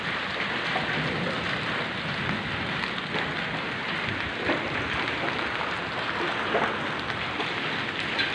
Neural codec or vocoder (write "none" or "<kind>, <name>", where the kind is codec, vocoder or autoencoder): none